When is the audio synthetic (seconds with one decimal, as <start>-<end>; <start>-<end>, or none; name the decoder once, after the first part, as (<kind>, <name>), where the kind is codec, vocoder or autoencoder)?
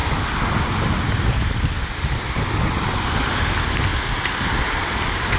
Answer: none